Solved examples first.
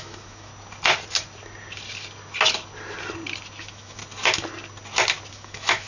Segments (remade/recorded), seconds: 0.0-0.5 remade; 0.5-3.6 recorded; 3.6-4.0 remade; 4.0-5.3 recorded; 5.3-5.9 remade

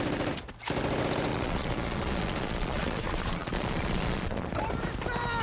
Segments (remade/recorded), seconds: 0.0-1.3 recorded; 1.3-4.5 remade; 4.5-5.4 recorded

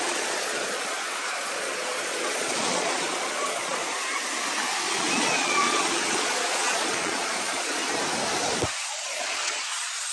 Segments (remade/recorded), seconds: 0.0-3.8 remade; 3.8-4.9 recorded; 4.9-7.8 remade; 7.8-8.9 recorded; 8.9-10.1 remade